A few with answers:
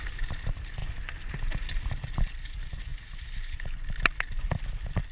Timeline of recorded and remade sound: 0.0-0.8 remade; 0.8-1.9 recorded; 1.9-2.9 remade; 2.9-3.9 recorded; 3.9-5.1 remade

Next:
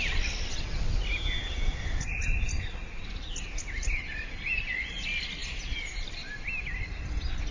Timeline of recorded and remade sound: 0.0-7.5 recorded

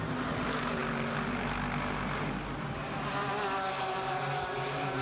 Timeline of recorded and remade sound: 0.0-0.8 remade; 0.8-3.8 recorded; 3.8-5.0 remade